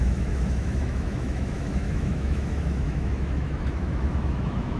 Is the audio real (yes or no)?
no